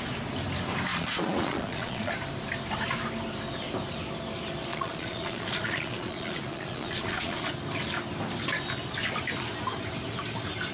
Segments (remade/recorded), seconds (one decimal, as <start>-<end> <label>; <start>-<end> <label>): 0.0-0.9 recorded; 0.9-2.1 remade; 2.1-4.7 recorded; 4.7-7.5 remade; 7.5-10.7 recorded